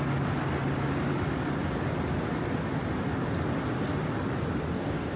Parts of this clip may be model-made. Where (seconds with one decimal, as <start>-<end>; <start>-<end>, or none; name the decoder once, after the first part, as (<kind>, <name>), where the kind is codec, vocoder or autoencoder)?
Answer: 4.7-5.2 (codec, DAC)